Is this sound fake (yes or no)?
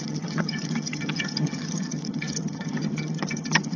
yes